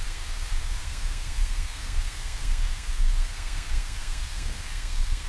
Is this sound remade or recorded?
remade